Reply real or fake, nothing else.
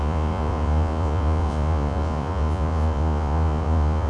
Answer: fake